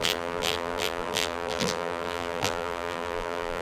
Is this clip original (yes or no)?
no